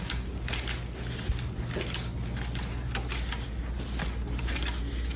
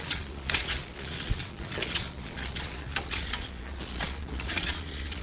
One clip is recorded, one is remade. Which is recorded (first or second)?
first